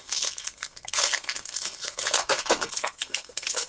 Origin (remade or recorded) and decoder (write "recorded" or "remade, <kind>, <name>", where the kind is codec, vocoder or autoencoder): remade, codec, SNAC